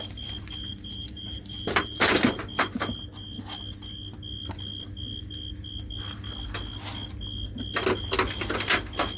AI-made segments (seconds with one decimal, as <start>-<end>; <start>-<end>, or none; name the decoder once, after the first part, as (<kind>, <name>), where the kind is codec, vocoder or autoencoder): 0.7-2.3 (vocoder, BigVGAN v2)